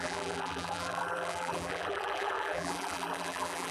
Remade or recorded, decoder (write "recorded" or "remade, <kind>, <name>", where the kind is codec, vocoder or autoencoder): remade, vocoder, BigVGAN v2